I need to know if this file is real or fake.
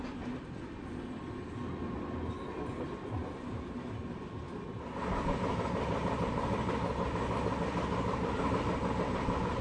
real